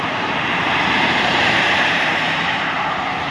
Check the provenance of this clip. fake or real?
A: fake